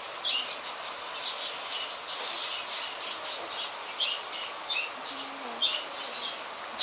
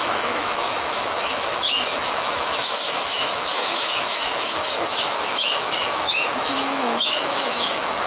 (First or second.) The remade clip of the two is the second